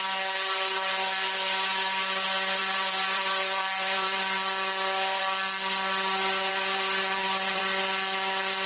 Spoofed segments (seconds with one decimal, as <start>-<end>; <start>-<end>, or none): 2.6-5.2; 6.5-7.6